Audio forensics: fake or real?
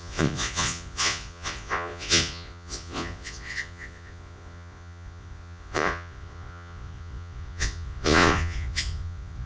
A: fake